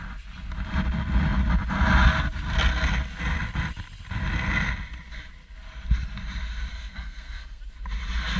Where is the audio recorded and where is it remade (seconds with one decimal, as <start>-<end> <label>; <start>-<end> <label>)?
0.0-6.7 recorded; 6.7-7.6 remade; 7.6-8.4 recorded